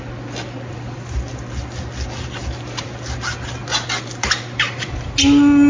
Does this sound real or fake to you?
real